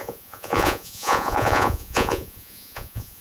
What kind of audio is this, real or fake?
fake